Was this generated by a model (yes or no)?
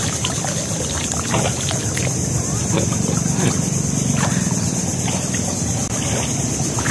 no